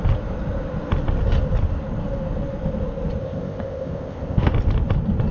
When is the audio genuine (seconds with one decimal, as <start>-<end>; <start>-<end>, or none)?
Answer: 0.0-3.2; 4.5-5.3